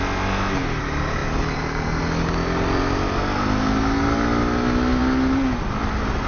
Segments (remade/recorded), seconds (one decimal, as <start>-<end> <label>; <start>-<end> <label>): 0.0-6.3 recorded